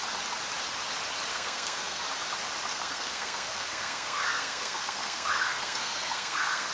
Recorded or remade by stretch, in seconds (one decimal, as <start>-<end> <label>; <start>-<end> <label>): 0.0-1.3 recorded; 1.3-2.0 remade; 2.0-2.7 recorded; 2.7-6.7 remade